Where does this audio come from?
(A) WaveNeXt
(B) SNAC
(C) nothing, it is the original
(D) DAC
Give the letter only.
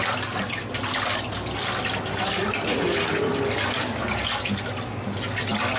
C